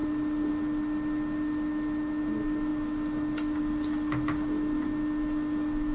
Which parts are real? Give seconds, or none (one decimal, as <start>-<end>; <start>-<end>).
0.0-5.9